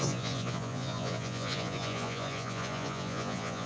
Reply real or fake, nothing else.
fake